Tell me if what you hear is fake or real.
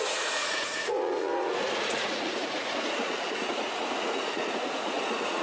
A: fake